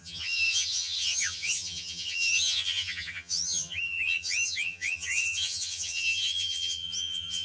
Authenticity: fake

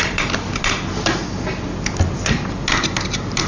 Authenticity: real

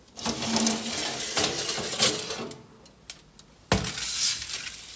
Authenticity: real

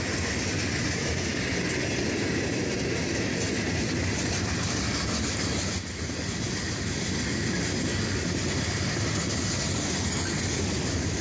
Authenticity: real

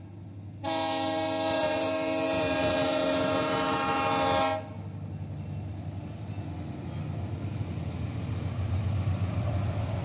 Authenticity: real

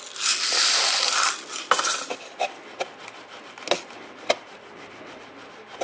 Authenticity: real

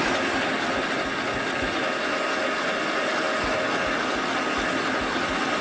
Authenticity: real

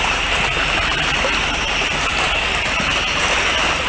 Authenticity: real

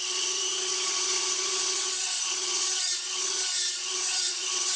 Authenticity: fake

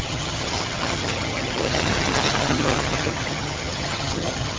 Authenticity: fake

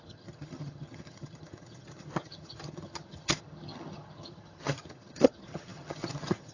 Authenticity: fake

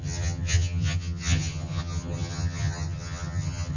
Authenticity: fake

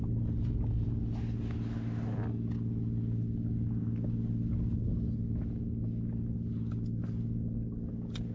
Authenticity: real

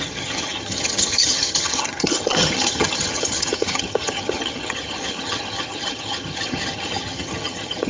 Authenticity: fake